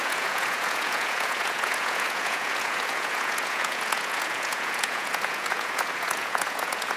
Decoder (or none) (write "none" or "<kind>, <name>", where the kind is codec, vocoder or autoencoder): vocoder, Vocos